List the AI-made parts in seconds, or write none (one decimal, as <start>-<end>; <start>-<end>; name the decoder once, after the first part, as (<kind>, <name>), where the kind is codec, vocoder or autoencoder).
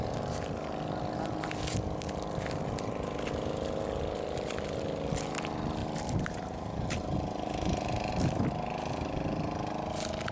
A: 5.8-8.1 (vocoder, BigVGAN v2)